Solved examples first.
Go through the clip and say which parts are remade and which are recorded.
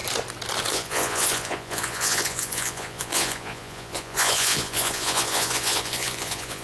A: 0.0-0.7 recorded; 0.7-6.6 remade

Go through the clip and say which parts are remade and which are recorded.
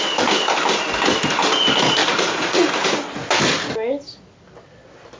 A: 0.0-2.0 recorded; 2.0-2.6 remade; 2.6-5.2 recorded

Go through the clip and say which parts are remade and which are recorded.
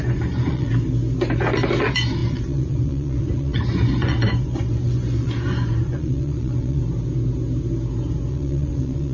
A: 0.0-0.7 remade; 0.7-1.8 recorded; 1.8-6.8 remade; 6.8-8.3 recorded; 8.3-9.1 remade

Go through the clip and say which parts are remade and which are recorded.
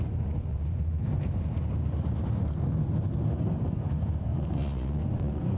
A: 0.0-0.5 recorded; 0.5-1.0 remade; 1.0-4.3 recorded; 4.3-5.6 remade